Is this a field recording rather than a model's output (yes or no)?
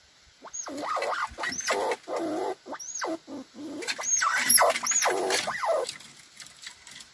yes